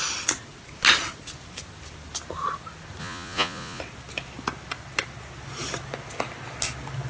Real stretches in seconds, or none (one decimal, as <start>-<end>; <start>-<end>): 0.0-3.0; 3.8-7.1

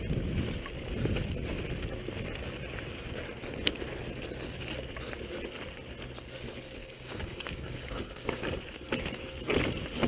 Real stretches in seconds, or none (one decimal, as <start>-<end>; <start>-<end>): 0.0-6.8; 8.4-10.1

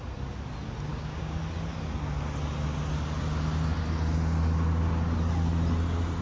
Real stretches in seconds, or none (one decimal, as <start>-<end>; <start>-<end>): 0.0-0.9; 1.4-6.2

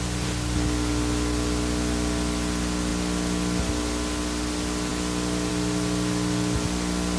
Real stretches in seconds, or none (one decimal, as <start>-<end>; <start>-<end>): 0.0-7.2